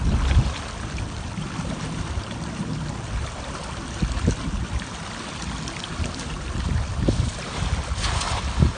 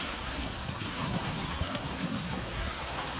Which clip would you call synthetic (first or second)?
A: second